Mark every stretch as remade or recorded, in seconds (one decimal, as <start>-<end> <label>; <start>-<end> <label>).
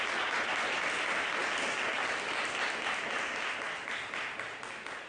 0.0-5.1 recorded